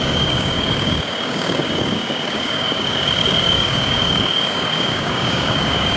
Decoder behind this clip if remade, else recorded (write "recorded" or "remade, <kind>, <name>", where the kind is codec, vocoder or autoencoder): remade, codec, DAC